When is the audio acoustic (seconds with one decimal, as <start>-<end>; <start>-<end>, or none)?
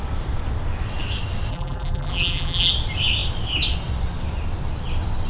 0.0-1.5; 2.7-5.3